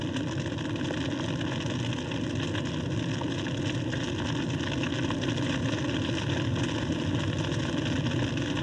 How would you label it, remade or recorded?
recorded